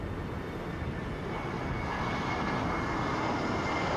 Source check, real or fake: real